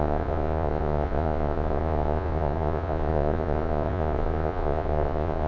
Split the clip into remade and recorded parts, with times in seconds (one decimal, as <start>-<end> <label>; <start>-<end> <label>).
0.0-5.5 remade